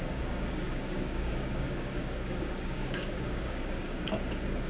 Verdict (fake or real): fake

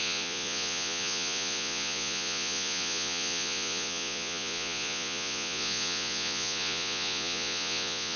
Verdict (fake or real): fake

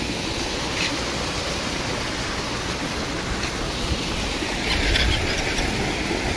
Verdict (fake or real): real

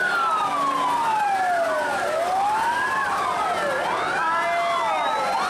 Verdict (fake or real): real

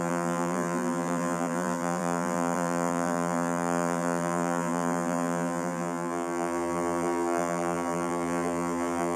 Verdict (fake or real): fake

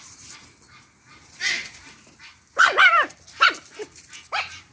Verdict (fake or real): real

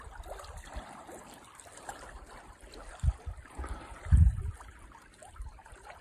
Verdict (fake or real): fake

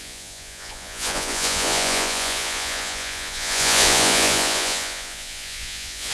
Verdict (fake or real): fake